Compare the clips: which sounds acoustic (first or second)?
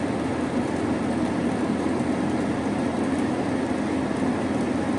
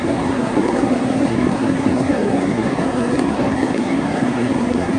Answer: first